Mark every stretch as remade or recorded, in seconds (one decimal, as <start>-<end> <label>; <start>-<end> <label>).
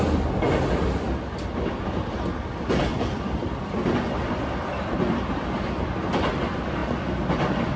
0.0-2.9 recorded; 2.9-6.3 remade; 6.3-7.8 recorded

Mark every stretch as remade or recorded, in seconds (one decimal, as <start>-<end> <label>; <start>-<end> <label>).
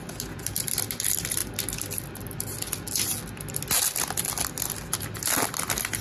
0.0-6.0 recorded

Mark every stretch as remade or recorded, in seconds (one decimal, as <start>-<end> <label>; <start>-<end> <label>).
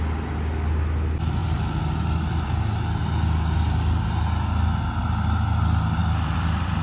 0.0-1.4 recorded; 1.4-3.0 remade; 3.0-6.0 recorded; 6.0-6.8 remade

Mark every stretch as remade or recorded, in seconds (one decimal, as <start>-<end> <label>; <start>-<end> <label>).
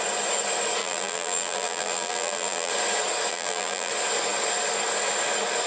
0.0-0.8 recorded; 0.8-2.7 remade; 2.7-3.3 recorded; 3.3-3.9 remade; 3.9-5.7 recorded